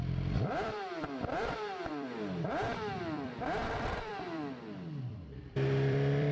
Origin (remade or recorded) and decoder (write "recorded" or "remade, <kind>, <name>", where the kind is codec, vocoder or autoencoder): remade, vocoder, BigVGAN v2